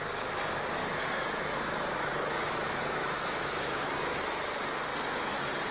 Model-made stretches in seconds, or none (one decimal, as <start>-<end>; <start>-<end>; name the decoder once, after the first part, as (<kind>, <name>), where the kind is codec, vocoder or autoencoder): 0.8-4.2 (autoencoder, DAC-VAE)